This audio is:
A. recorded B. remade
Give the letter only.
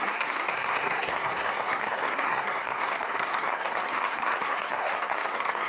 B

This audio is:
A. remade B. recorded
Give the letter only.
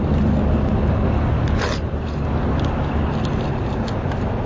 B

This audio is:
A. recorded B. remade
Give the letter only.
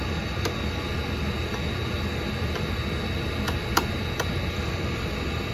A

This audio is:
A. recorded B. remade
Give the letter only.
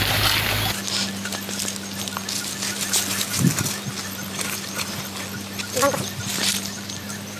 A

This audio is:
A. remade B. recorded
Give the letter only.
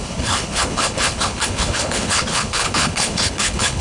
A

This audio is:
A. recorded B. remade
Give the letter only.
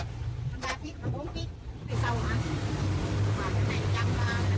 B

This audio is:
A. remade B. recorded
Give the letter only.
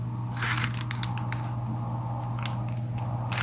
B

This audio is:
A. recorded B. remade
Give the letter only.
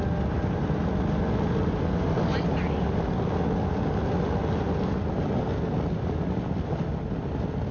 A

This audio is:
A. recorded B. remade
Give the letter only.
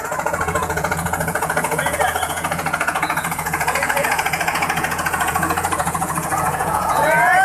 B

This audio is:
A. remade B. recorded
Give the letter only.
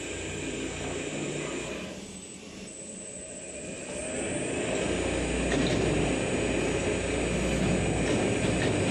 B